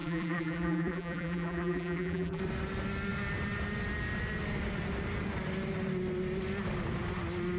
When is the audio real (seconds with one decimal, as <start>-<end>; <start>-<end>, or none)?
2.4-7.6